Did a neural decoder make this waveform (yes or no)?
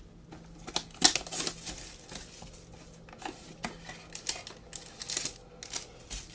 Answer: no